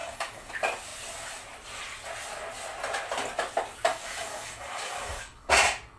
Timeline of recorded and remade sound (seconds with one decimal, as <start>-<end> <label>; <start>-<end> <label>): 0.0-0.5 remade; 0.5-3.9 recorded; 3.9-5.5 remade; 5.5-6.0 recorded